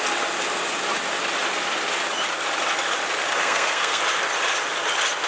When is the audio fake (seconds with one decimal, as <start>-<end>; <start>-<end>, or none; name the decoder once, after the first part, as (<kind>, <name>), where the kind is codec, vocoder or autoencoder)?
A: 3.3-4.0 (codec, SNAC)